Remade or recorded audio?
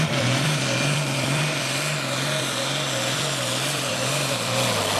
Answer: remade